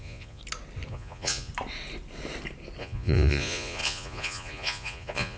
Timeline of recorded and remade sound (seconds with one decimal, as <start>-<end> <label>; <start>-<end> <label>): 0.0-0.4 remade; 0.4-0.9 recorded; 0.9-1.5 remade; 1.5-2.8 recorded; 2.8-5.4 remade